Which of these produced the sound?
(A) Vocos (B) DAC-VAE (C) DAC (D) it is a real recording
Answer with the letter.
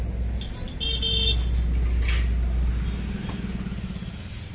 D